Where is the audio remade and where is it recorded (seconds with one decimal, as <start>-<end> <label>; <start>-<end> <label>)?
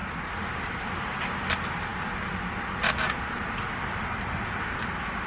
0.0-5.3 recorded